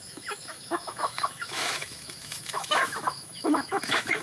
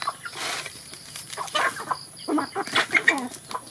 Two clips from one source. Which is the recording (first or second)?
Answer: second